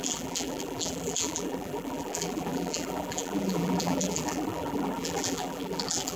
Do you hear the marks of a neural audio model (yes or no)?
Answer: yes